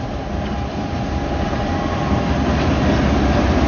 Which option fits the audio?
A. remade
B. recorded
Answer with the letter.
B